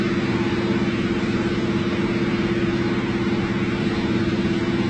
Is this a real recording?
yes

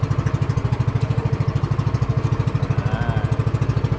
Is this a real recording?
yes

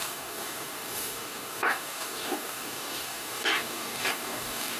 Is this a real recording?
no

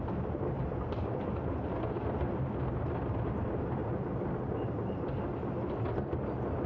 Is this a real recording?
yes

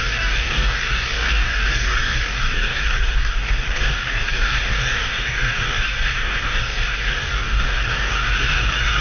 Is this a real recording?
no